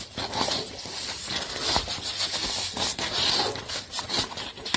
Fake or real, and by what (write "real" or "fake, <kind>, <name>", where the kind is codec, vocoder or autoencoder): real